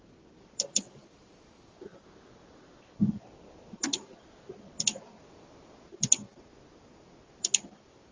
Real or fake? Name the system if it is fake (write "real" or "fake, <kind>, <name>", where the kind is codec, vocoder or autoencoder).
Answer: real